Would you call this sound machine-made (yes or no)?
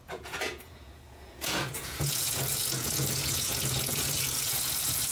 yes